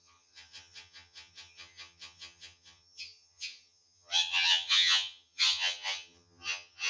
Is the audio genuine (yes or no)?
no